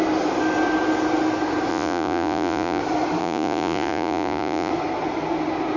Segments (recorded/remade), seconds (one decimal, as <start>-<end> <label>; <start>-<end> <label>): 0.0-1.7 recorded; 1.7-2.8 remade; 2.8-3.2 recorded; 3.2-4.7 remade; 4.7-5.8 recorded